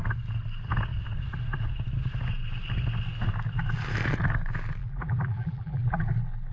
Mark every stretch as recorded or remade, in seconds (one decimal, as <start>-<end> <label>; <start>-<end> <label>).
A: 0.0-4.8 recorded; 4.8-6.0 remade; 6.0-6.5 recorded